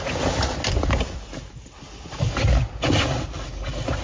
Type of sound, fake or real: real